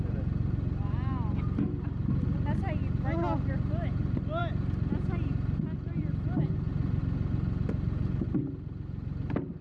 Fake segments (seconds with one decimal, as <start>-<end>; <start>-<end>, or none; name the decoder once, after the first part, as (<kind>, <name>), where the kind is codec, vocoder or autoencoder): none